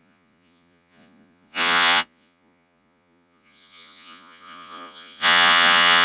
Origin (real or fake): fake